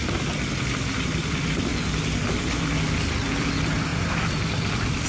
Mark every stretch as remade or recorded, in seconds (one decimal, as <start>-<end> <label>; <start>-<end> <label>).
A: 0.0-1.7 remade; 1.7-3.4 recorded; 3.4-5.1 remade